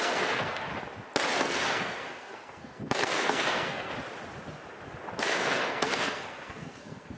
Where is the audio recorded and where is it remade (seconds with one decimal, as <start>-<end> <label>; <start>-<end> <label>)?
0.0-0.7 remade; 0.7-1.4 recorded; 1.4-3.9 remade; 3.9-5.2 recorded; 5.2-7.2 remade